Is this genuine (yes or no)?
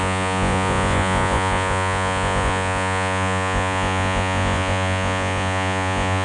no